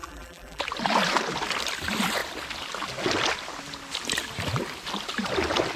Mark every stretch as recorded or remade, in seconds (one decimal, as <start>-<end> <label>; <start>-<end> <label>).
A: 0.0-0.6 remade; 0.6-5.8 recorded